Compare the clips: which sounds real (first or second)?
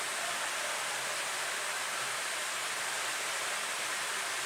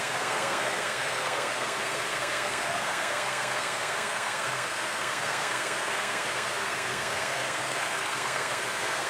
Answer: first